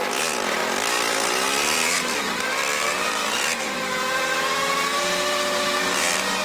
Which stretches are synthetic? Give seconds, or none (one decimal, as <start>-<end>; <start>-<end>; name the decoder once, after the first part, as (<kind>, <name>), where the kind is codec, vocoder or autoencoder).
0.6-3.8 (vocoder, BigVGAN v2)